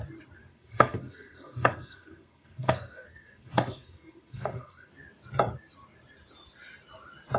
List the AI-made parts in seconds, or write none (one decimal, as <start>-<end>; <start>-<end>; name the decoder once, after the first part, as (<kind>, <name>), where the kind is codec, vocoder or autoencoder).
0.5-4.9 (codec, SNAC)